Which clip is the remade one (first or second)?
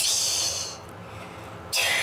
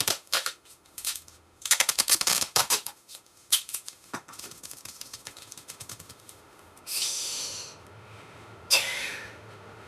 second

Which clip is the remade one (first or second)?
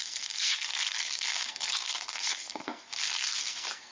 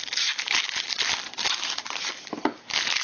first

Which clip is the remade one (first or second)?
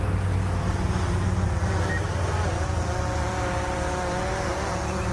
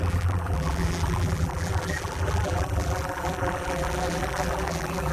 second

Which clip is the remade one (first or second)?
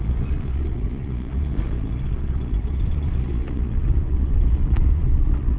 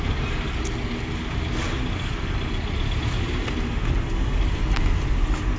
first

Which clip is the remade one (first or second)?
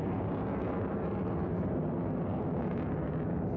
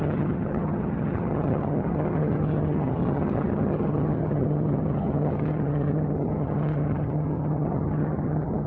second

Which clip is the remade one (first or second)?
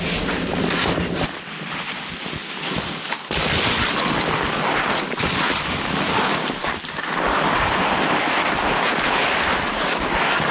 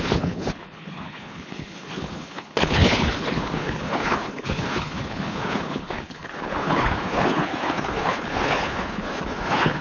second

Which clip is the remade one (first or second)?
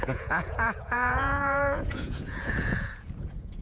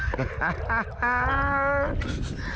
first